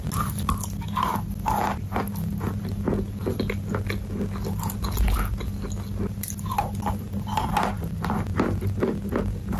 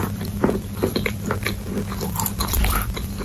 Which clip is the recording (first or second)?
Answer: first